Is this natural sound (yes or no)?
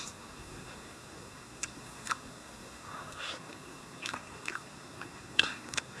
no